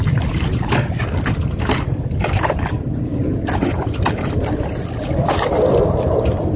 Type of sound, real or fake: real